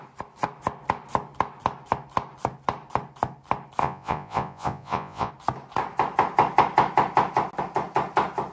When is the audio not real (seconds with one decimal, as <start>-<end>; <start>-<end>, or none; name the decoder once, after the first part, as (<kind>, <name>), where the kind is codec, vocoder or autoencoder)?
3.8-5.3 (vocoder, Vocos)